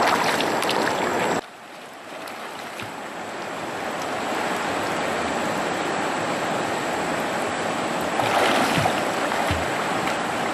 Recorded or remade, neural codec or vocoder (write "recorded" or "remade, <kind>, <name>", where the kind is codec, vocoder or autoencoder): recorded